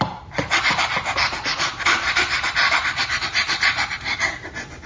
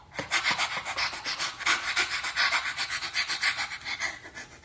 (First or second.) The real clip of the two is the second